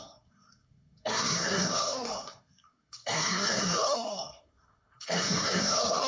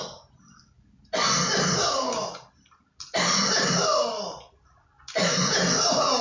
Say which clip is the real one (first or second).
second